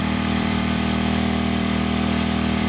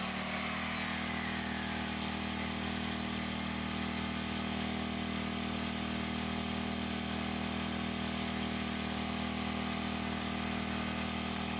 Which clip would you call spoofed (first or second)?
first